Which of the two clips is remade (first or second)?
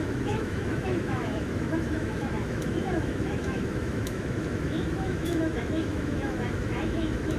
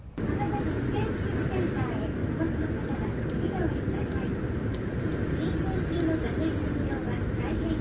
first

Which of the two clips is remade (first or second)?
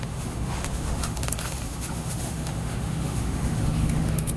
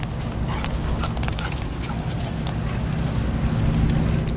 first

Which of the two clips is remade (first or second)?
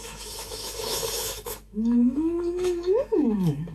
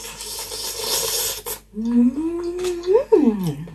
first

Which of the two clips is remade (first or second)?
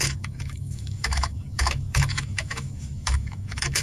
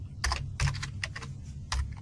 first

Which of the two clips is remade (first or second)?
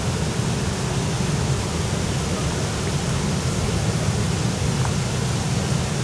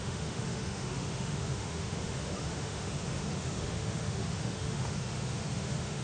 second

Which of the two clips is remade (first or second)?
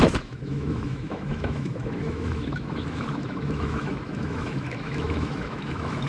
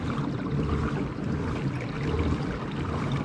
first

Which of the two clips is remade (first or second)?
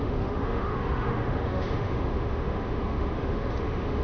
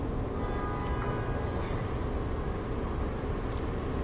first